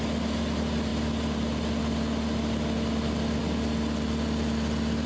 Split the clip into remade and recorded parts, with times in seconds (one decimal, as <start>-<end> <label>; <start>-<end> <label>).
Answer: 0.0-5.1 recorded